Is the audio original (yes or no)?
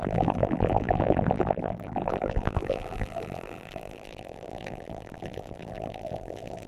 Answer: no